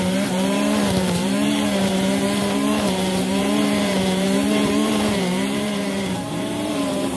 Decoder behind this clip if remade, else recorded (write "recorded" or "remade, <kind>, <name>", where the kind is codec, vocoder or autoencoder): remade, vocoder, BigVGAN v2